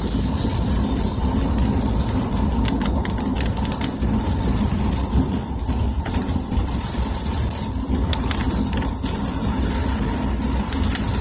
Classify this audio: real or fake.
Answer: real